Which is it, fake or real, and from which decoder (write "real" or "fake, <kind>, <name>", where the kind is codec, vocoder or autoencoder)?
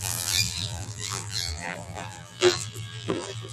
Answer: fake, vocoder, BigVGAN v2